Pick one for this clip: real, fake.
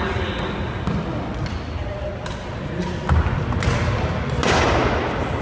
real